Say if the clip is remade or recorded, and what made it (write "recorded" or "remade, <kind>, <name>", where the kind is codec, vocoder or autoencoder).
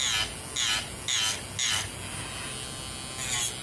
recorded